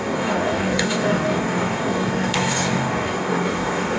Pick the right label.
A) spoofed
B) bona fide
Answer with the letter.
A